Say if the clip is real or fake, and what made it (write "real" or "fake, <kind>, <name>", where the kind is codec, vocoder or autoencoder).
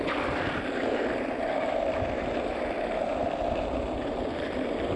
real